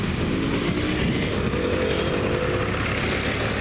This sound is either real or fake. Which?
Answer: real